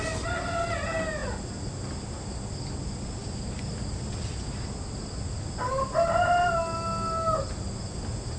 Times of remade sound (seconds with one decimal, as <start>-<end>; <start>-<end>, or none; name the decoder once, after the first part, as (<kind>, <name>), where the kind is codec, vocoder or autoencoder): none